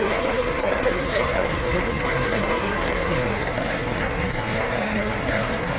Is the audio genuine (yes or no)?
no